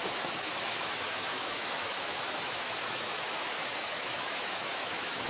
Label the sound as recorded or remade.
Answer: remade